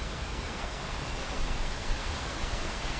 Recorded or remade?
remade